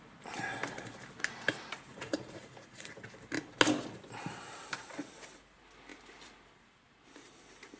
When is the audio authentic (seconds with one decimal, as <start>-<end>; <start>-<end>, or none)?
0.0-1.9; 2.9-7.8

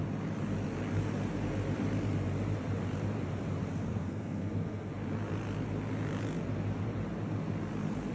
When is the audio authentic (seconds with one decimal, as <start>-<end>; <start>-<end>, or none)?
0.0-3.9; 4.9-8.1

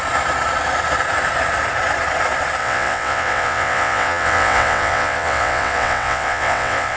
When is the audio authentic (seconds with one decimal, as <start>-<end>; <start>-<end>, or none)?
0.0-2.6

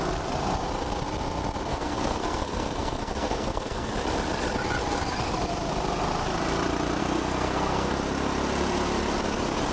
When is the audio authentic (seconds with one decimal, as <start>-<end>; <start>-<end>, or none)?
0.0-1.7; 3.9-7.0; 7.9-9.7

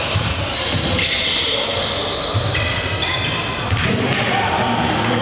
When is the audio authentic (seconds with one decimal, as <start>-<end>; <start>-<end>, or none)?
0.0-5.2

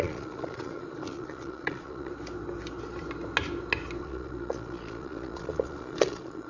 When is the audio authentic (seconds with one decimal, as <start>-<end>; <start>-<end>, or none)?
2.1-4.0